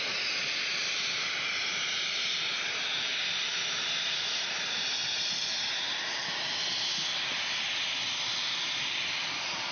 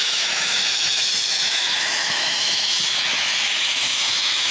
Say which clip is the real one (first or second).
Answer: first